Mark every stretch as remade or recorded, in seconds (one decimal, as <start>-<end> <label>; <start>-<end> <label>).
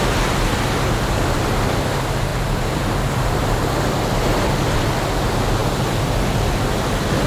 0.0-2.3 recorded; 2.3-4.5 remade; 4.5-7.3 recorded